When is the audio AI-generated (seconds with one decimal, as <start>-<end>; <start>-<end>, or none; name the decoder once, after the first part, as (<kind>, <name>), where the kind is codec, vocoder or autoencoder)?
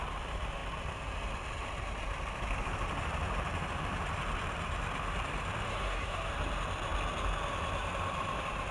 5.7-6.3 (codec, SNAC)